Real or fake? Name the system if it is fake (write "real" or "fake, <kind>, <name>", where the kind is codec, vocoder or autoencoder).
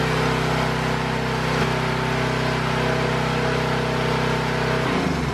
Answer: real